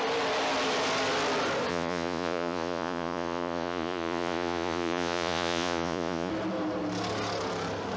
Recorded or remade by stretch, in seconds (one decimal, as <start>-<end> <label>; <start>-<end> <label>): 0.0-1.7 recorded; 1.7-6.3 remade; 6.3-8.0 recorded